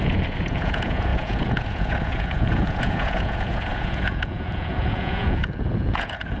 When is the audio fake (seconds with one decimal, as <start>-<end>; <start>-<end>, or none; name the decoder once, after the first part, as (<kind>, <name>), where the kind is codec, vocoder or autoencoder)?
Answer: 0.0-6.4 (vocoder, Vocos)